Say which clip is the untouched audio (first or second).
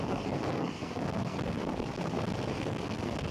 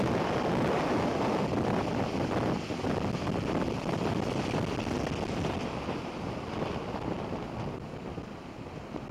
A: second